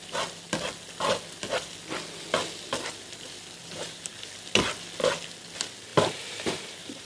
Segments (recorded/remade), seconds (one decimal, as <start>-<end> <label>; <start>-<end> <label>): 0.0-3.6 recorded; 3.6-4.1 remade; 4.1-5.9 recorded; 5.9-7.1 remade